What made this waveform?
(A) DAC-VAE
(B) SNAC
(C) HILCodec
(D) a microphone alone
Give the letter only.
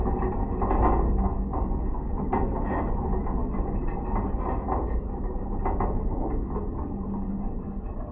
D